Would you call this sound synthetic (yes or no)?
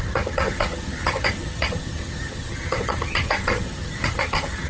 yes